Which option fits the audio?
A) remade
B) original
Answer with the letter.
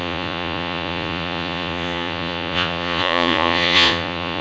A